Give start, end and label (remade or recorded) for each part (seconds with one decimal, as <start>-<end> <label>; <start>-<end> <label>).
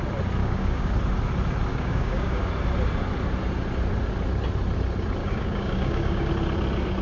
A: 0.0-0.4 recorded; 0.4-0.9 remade; 0.9-1.7 recorded; 1.7-2.5 remade; 2.5-5.2 recorded; 5.2-6.3 remade; 6.3-7.0 recorded